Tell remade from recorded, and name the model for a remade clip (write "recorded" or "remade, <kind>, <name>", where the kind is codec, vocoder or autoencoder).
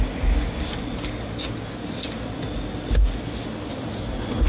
recorded